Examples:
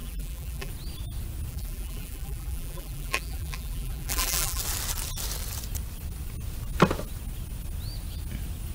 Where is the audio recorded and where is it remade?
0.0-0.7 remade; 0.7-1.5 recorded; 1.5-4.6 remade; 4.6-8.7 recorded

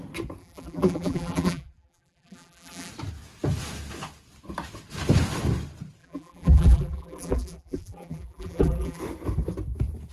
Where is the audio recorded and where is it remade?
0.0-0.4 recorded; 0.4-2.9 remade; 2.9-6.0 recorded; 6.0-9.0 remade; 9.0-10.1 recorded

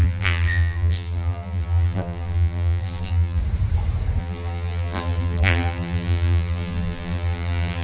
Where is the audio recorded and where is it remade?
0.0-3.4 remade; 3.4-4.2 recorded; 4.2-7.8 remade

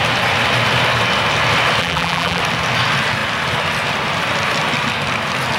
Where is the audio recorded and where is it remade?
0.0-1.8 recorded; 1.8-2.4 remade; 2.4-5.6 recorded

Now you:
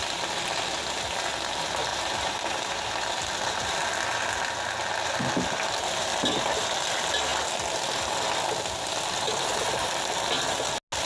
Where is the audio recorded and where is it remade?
0.0-1.9 recorded; 1.9-2.7 remade; 2.7-11.1 recorded

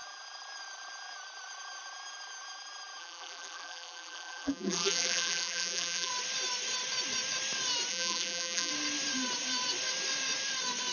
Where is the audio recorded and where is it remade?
0.0-3.0 recorded; 3.0-6.1 remade; 6.1-7.9 recorded; 7.9-8.7 remade; 8.7-10.9 recorded

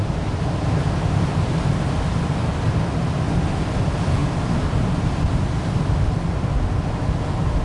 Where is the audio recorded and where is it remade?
0.0-7.6 recorded

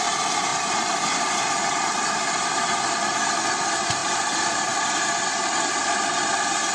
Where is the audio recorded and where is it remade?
0.0-4.0 recorded; 4.0-6.2 remade; 6.2-6.7 recorded